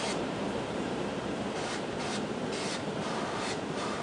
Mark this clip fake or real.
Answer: fake